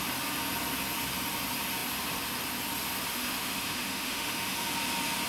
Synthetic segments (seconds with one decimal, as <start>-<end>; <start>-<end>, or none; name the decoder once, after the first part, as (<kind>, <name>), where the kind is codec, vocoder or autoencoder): 3.1-4.7 (autoencoder, DAC-VAE)

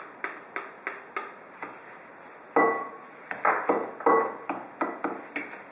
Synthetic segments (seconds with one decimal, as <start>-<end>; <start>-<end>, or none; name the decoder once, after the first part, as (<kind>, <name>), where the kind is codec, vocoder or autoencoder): 2.8-3.4 (vocoder, Vocos)

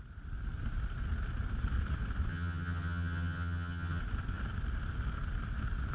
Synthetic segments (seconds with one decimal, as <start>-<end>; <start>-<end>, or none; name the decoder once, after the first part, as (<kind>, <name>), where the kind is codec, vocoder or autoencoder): 2.3-4.0 (vocoder, HiFi-GAN)

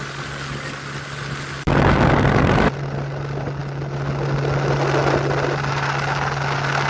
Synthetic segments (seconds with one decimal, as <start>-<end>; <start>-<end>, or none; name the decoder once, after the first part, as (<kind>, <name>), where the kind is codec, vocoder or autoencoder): none